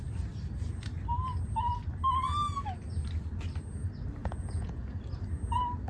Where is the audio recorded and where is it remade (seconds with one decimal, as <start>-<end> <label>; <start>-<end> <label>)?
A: 0.0-4.2 recorded; 4.2-5.0 remade; 5.0-5.9 recorded